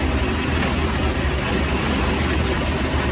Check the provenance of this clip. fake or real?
real